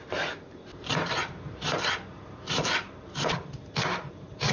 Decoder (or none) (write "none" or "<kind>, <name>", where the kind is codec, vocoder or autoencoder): vocoder, BigVGAN v2